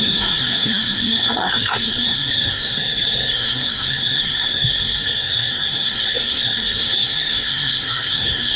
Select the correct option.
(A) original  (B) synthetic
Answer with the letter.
B